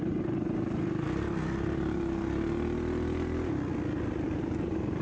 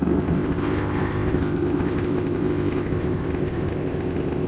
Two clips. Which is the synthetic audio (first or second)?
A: second